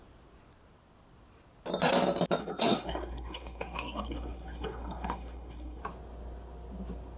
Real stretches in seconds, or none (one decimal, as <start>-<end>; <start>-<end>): 0.0-2.4; 5.8-7.2